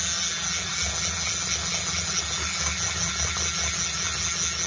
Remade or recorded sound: recorded